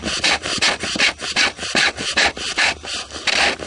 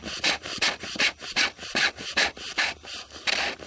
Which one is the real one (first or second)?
first